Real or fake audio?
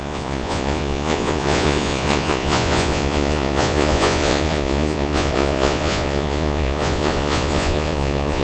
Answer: fake